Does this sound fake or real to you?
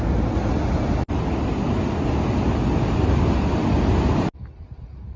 real